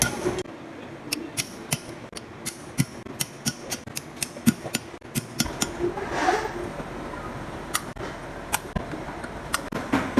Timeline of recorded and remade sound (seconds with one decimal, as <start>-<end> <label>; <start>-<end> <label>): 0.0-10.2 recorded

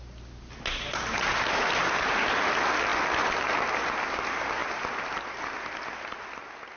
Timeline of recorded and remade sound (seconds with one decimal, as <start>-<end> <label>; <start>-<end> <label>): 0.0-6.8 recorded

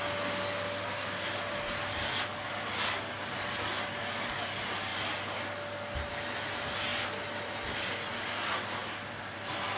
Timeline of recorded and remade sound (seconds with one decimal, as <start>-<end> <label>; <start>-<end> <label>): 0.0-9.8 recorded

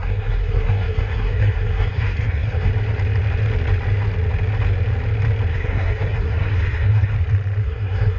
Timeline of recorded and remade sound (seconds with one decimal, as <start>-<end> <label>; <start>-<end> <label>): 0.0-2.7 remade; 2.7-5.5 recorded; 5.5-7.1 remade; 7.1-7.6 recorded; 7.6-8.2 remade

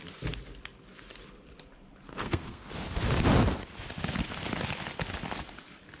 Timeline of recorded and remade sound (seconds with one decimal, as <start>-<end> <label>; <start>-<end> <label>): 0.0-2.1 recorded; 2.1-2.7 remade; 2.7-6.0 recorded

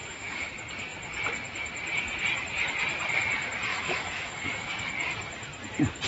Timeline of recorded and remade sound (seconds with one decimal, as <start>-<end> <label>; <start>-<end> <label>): 0.0-0.5 remade; 0.5-3.7 recorded; 3.7-4.7 remade; 4.7-6.1 recorded